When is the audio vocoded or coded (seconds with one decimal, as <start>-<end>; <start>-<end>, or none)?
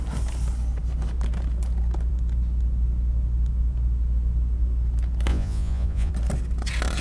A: 5.3-6.1